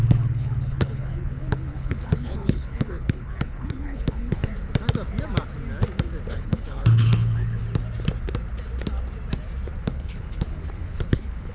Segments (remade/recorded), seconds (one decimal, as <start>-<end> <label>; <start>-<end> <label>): 0.0-4.4 remade; 4.4-6.3 recorded; 6.3-7.6 remade; 7.6-9.8 recorded; 9.8-11.5 remade